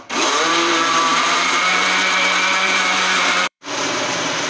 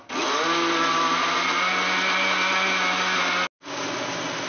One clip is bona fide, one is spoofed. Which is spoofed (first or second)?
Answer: first